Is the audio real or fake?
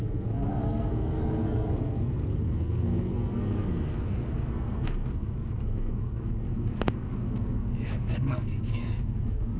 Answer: fake